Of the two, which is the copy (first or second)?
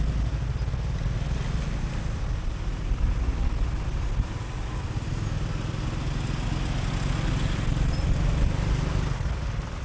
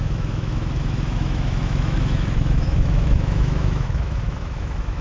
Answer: second